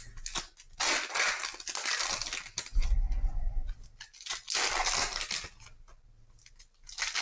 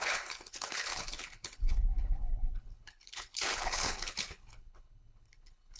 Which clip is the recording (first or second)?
first